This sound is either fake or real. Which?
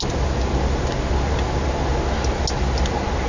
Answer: real